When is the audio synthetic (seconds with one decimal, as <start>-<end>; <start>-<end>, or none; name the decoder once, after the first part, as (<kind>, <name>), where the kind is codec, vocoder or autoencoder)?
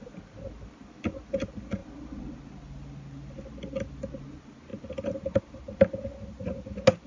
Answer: none